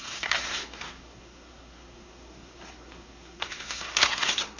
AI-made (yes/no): yes